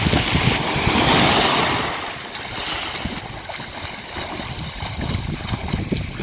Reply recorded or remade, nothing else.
recorded